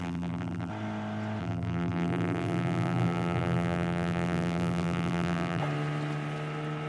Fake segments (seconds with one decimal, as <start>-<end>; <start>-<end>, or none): 0.0-0.7; 1.4-5.6